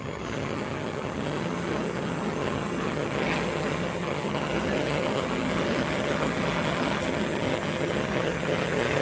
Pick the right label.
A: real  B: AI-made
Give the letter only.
B